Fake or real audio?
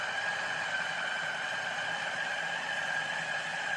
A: real